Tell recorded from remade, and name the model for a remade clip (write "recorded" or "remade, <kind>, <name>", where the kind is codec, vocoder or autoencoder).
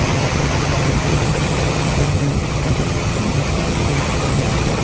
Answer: remade, vocoder, HiFi-GAN